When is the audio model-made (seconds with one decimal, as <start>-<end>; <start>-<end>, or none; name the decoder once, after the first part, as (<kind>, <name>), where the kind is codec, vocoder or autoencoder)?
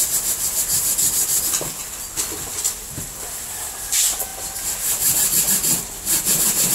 none